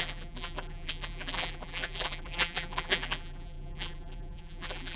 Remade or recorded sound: remade